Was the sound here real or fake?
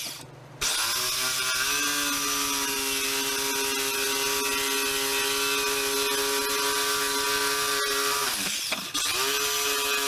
real